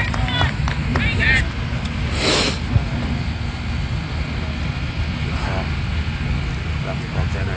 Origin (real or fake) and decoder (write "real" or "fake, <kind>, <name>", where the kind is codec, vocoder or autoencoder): real